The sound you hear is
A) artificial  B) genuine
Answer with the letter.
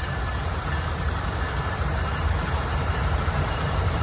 A